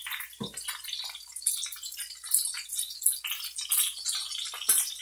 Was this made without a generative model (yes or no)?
yes